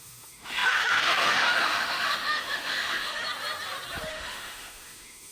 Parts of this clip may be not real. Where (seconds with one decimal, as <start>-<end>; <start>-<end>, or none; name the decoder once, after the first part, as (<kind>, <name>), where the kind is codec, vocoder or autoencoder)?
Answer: 0.0-3.2 (autoencoder, DAC-VAE); 4.1-5.3